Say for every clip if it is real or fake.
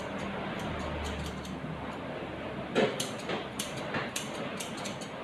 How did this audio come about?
real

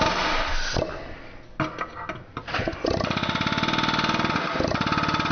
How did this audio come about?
real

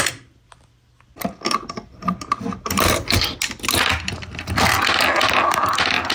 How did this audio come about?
real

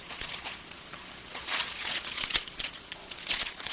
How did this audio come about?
fake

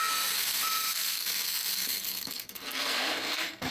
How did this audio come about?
fake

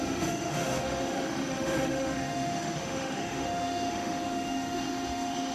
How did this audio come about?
fake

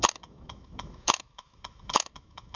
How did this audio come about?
fake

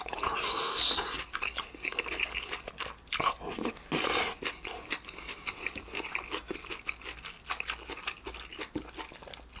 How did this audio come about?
real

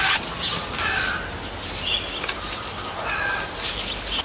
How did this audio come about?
real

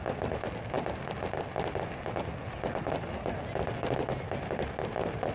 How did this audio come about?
real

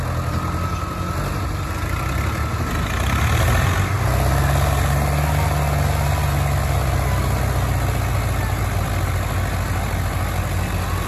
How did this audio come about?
real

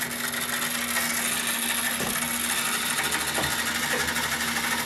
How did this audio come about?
real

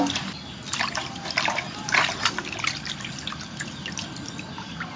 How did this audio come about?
real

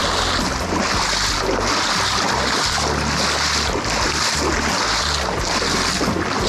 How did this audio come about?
real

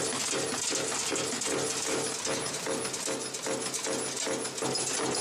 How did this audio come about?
real